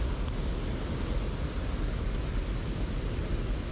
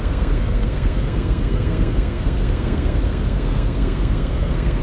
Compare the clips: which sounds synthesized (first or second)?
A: second